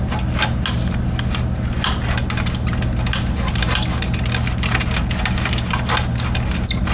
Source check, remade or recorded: recorded